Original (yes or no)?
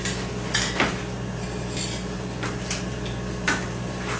yes